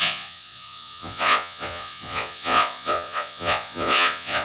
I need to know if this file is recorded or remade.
remade